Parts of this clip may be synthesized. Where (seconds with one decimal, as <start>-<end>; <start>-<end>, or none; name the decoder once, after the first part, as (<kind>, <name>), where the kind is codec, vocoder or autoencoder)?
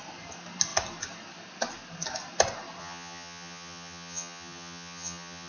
2.8-5.5 (vocoder, HiFi-GAN)